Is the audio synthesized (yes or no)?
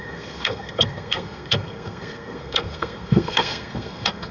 yes